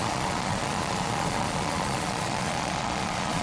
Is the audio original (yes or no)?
no